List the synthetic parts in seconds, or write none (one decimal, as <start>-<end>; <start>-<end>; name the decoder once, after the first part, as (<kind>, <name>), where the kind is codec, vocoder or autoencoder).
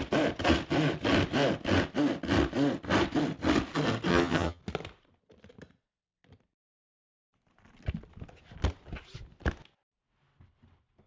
4.1-4.6 (vocoder, HiFi-GAN)